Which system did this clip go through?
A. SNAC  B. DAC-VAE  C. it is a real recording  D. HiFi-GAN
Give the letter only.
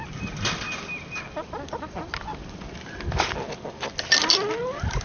C